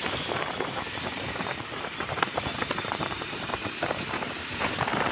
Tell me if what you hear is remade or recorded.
remade